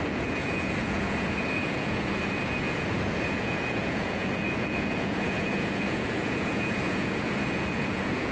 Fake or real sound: fake